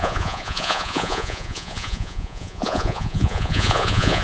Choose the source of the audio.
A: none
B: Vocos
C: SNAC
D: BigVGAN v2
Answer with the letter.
B